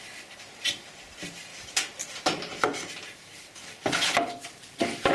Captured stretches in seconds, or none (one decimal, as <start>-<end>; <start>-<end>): 0.0-1.5; 4.1-5.1